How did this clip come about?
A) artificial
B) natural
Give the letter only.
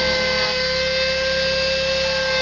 B